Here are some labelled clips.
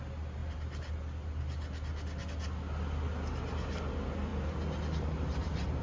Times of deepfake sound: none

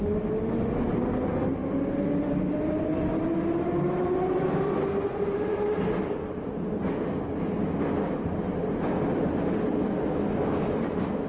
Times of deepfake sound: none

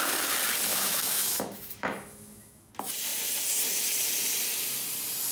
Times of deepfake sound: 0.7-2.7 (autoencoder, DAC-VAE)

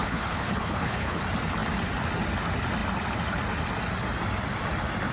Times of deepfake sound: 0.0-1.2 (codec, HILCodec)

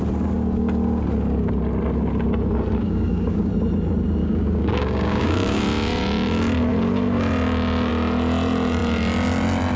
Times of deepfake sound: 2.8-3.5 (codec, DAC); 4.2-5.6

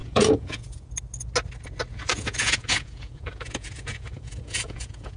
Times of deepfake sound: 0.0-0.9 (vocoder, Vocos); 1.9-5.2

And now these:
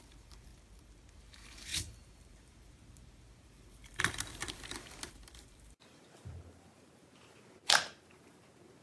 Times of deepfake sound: 0.0-0.5 (vocoder, BigVGAN v2); 1.1-8.8